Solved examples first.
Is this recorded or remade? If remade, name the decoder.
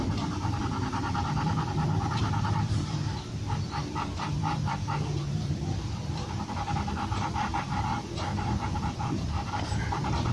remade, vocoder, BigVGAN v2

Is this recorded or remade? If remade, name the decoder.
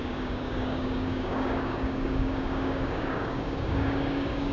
remade, codec, DAC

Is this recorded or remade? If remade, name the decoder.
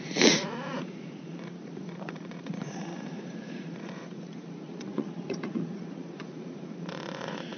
remade, vocoder, Vocos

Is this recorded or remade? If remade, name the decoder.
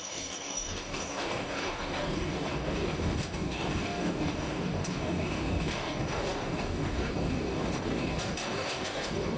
remade, codec, DAC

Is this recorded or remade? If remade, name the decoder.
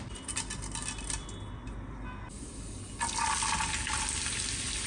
recorded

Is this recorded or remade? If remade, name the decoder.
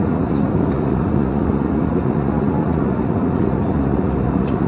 remade, vocoder, Vocos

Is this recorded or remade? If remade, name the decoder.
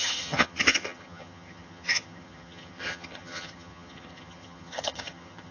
remade, vocoder, HiFi-GAN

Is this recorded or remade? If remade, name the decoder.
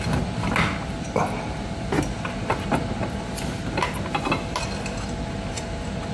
recorded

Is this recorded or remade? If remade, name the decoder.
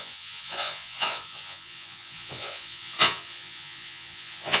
remade, vocoder, Vocos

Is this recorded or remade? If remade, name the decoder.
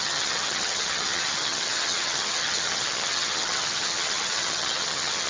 remade, vocoder, HiFi-GAN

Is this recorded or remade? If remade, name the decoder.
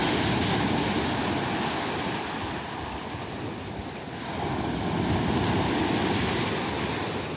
recorded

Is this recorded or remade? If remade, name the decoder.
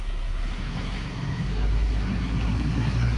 remade, codec, SNAC